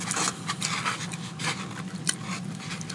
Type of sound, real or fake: real